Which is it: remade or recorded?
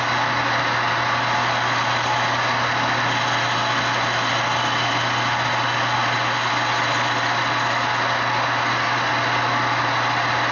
recorded